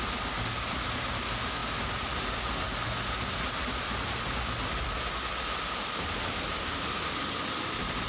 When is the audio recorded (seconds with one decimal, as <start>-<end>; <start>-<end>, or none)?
0.0-8.1